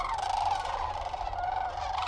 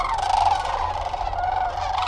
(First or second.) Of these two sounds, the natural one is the second